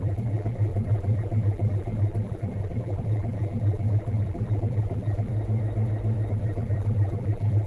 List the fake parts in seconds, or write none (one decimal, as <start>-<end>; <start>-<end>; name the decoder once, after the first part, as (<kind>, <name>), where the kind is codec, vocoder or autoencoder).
0.0-5.3 (vocoder, BigVGAN v2); 6.3-7.7